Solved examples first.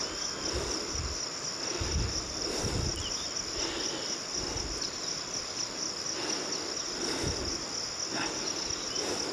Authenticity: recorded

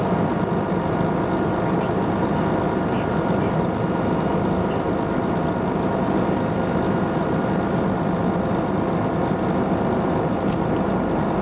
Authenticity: recorded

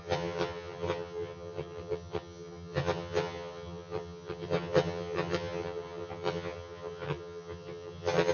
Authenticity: remade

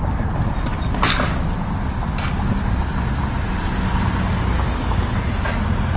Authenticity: recorded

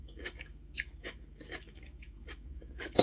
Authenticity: remade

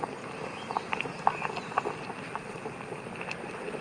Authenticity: recorded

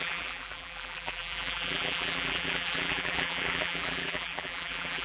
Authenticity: remade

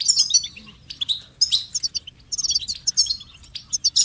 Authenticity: recorded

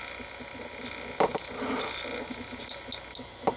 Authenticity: recorded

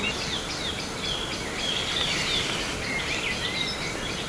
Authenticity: recorded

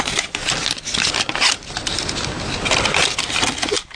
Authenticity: recorded